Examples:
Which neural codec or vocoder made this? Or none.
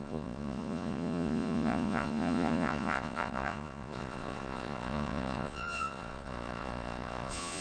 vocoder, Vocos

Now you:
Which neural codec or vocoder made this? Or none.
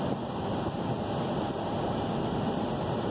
none